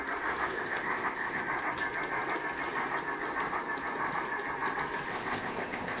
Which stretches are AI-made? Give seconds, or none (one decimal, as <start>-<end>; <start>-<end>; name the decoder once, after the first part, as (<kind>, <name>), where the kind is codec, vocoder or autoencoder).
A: 0.5-1.4 (codec, ZipCodec); 5.1-6.0